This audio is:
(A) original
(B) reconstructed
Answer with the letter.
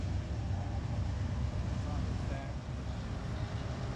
A